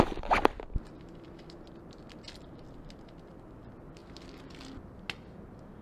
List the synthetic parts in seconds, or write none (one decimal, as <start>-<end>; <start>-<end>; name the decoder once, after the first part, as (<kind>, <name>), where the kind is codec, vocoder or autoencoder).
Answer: none